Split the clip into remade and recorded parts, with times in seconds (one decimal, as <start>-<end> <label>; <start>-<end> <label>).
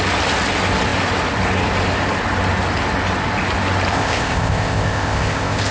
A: 0.0-3.9 recorded; 3.9-5.7 remade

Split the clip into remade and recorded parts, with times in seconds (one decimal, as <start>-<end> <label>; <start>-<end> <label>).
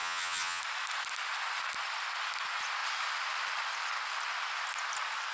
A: 0.0-0.6 remade; 0.6-5.3 recorded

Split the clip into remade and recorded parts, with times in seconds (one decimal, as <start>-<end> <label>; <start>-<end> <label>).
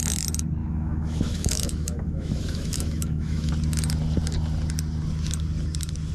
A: 0.0-0.6 recorded; 0.6-3.5 remade; 3.5-6.1 recorded